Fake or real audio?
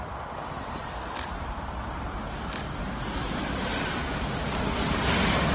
real